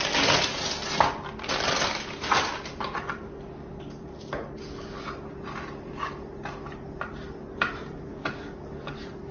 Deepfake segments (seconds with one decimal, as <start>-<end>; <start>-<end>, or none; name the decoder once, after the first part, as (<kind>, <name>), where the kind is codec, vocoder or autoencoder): 8.1-9.3 (codec, DAC)